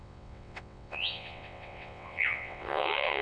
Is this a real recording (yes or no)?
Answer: no